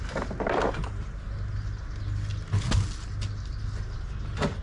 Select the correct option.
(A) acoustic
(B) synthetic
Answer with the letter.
A